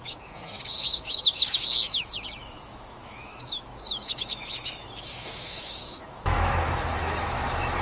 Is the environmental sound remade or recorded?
remade